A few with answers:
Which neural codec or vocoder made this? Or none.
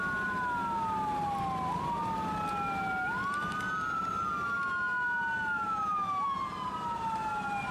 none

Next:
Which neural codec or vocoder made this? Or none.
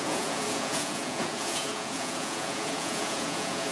vocoder, Vocos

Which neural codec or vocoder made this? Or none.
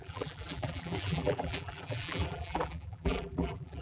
vocoder, BigVGAN v2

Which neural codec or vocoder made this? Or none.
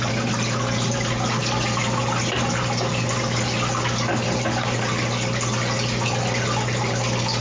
none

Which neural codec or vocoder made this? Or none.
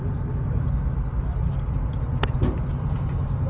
none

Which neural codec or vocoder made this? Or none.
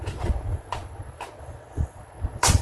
vocoder, Vocos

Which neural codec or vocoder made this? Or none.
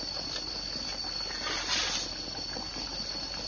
none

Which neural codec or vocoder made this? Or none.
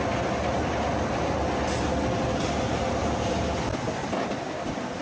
none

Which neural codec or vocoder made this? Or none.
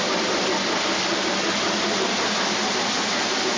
none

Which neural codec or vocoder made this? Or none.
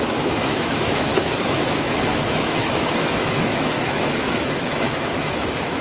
autoencoder, DAC-VAE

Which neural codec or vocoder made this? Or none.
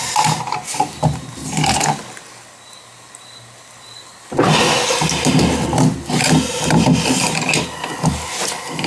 none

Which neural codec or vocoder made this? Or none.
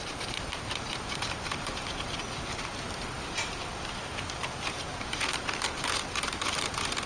vocoder, BigVGAN v2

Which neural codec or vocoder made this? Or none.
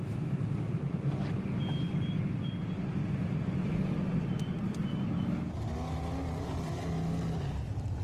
none